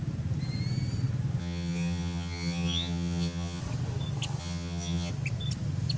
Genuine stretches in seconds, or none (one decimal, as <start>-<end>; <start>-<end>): 0.0-1.4; 3.6-4.4; 5.1-6.0